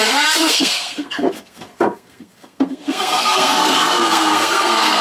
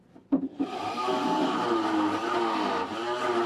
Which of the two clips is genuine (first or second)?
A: second